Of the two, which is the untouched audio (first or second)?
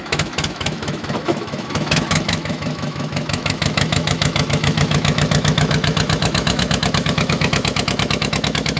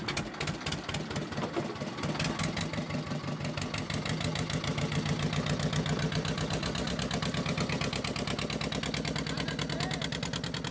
second